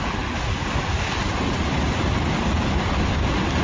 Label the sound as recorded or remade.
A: recorded